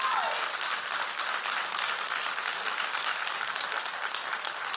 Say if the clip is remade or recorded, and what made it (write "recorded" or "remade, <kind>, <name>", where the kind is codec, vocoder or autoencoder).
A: recorded